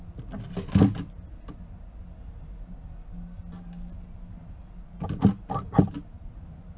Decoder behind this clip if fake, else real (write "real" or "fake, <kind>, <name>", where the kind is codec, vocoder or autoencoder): real